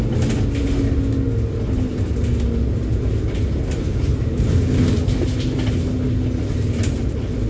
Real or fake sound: real